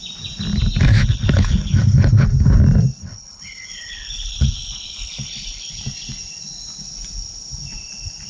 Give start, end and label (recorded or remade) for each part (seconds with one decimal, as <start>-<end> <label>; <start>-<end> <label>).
0.0-0.9 recorded; 0.9-2.3 remade; 2.3-3.0 recorded; 3.0-5.7 remade; 5.7-8.3 recorded